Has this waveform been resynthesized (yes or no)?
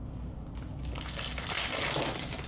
no